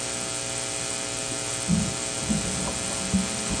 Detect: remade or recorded recorded